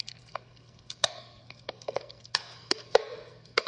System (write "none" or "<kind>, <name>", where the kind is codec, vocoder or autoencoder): codec, SNAC